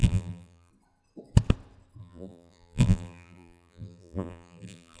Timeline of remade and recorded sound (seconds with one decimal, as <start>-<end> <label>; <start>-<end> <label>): 0.0-0.7 remade; 0.7-2.0 recorded; 2.0-5.0 remade